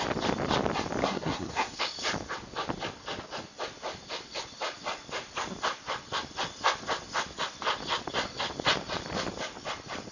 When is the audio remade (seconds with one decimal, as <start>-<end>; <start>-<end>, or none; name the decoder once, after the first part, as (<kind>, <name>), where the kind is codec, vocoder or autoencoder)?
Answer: 1.0-1.8 (codec, SNAC)